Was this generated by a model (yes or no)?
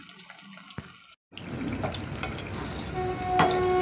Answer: no